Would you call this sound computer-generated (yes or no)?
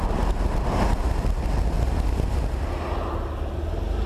no